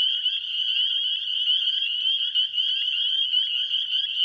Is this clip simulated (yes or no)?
no